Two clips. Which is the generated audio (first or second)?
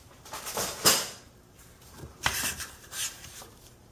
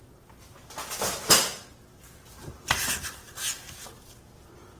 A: first